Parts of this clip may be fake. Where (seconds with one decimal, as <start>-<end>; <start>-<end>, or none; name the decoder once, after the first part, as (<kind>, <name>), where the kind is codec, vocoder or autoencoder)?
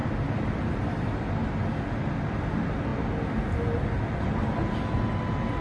none